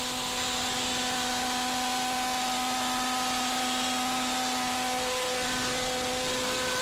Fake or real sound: real